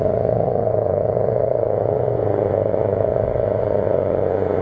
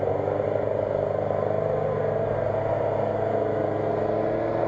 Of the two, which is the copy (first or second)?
first